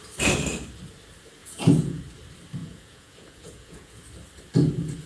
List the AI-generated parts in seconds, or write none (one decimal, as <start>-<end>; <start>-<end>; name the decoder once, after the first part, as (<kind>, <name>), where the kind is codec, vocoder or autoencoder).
1.4-2.0 (vocoder, Vocos); 2.6-4.0